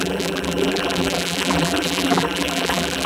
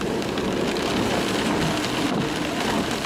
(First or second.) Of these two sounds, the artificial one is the first